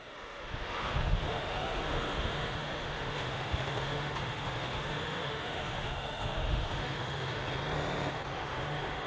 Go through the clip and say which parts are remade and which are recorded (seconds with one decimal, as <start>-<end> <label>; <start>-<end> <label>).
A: 0.0-7.4 remade; 7.4-8.1 recorded; 8.1-9.1 remade